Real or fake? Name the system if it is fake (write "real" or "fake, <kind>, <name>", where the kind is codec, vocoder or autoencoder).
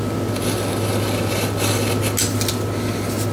real